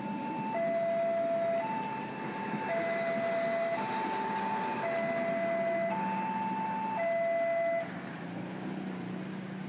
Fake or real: real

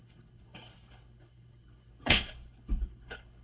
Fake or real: fake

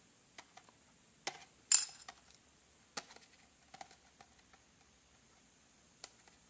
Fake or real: real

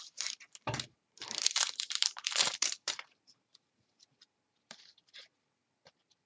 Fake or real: fake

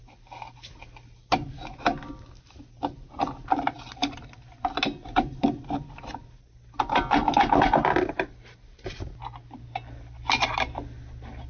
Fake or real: real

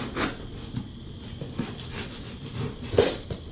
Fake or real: real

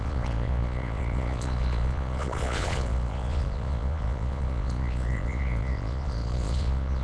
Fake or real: fake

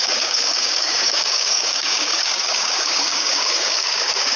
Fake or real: fake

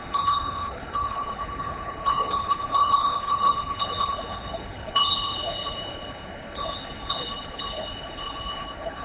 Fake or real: fake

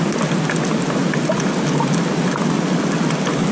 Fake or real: real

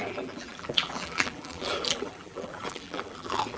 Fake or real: fake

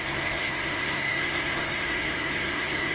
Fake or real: fake